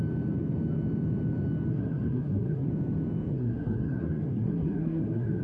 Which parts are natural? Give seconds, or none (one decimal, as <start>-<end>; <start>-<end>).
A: 0.0-1.7; 2.7-3.3